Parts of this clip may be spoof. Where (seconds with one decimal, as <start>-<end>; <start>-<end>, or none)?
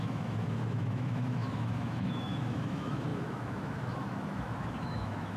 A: 0.0-5.4